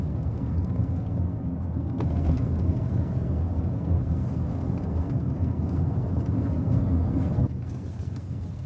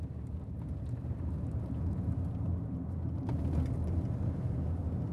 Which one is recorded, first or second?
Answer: second